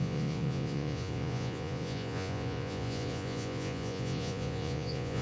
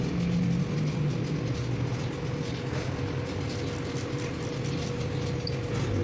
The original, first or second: second